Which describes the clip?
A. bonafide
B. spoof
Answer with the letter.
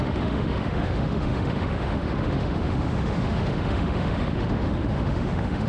B